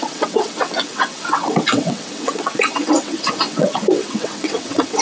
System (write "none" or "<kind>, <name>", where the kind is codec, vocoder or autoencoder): vocoder, WaveNeXt